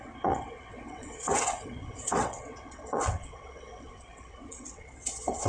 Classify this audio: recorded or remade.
remade